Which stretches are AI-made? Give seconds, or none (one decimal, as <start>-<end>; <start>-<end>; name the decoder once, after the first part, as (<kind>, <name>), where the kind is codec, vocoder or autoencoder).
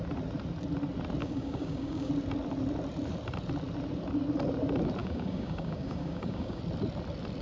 1.2-2.1 (codec, DAC); 5.0-6.6